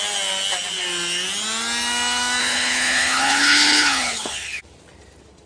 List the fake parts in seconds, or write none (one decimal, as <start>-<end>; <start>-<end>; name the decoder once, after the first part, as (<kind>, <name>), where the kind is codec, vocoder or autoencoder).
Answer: 2.4-4.6 (codec, HILCodec)